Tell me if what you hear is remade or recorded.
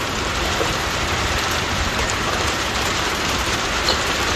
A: remade